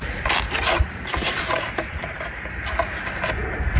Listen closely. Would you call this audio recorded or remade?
recorded